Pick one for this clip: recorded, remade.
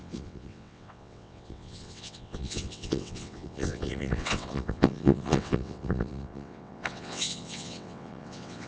remade